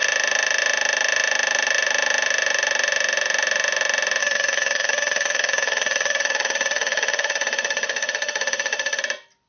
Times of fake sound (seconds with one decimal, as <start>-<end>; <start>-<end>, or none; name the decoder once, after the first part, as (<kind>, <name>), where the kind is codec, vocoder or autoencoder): 4.2-9.0 (autoencoder, DAC-VAE)